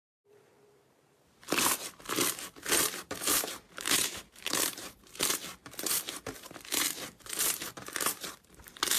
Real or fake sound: fake